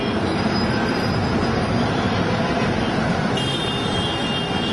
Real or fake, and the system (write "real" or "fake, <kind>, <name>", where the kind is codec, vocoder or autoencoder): real